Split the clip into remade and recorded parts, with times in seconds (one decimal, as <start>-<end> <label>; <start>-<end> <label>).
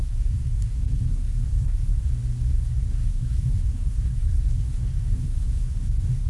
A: 0.0-2.1 remade; 2.1-2.5 recorded; 2.5-6.3 remade